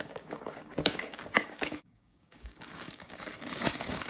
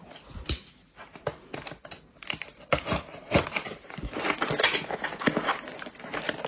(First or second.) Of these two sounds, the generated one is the first